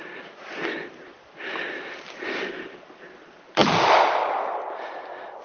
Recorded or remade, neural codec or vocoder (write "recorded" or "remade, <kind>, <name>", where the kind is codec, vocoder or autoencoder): recorded